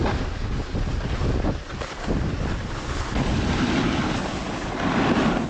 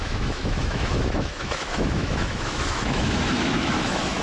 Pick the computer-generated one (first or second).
second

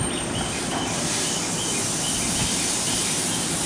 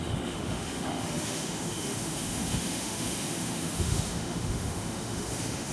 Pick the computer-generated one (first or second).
second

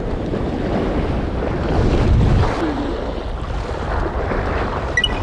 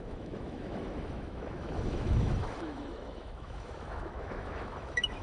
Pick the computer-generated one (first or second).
second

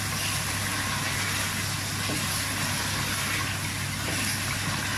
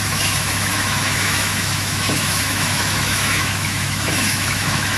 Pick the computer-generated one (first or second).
second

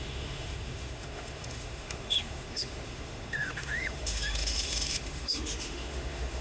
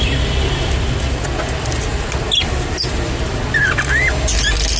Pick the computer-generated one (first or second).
first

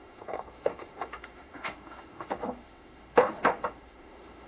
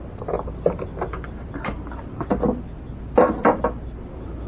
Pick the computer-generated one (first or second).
first